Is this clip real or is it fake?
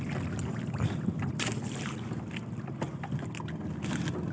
real